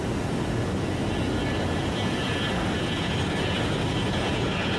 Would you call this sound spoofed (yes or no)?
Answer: no